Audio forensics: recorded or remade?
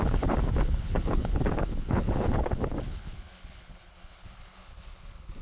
remade